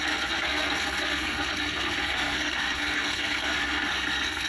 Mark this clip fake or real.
fake